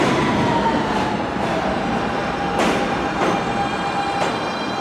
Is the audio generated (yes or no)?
no